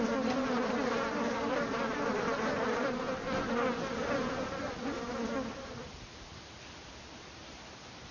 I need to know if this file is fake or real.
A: real